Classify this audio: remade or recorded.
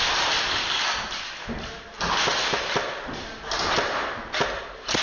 recorded